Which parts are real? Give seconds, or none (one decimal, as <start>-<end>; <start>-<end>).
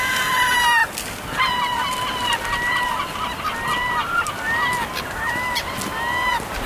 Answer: 0.0-6.7